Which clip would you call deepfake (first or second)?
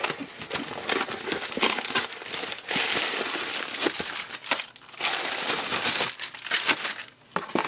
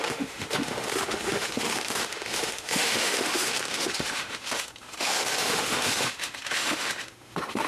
second